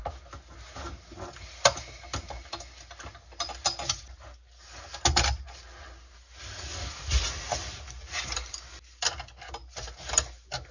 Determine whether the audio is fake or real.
real